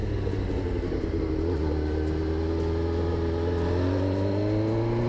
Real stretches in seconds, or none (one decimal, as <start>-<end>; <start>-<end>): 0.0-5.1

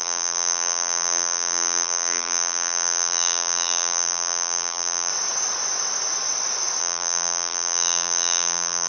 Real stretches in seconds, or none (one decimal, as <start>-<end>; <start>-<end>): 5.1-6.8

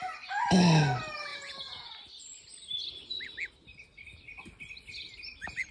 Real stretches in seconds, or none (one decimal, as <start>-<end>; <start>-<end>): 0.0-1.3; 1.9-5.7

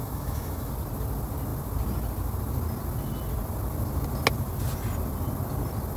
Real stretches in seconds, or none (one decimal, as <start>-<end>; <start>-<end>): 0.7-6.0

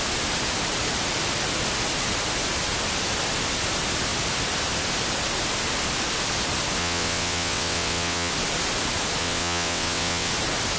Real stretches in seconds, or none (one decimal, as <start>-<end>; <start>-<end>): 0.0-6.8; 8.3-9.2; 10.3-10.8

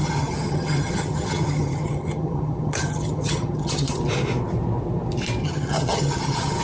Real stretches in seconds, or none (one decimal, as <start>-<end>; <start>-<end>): 4.0-5.4